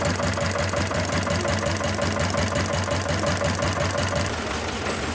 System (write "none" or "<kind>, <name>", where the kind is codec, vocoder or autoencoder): none